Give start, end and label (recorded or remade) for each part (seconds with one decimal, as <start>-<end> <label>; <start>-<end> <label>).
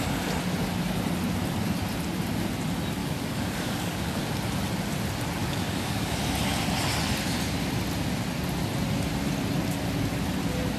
0.0-3.0 recorded; 3.0-4.2 remade; 4.2-5.4 recorded; 5.4-6.1 remade; 6.1-10.8 recorded